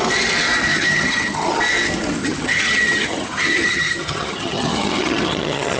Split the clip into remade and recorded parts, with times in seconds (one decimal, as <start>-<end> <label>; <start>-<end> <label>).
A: 0.0-0.7 recorded; 0.7-1.6 remade; 1.6-2.2 recorded; 2.2-5.8 remade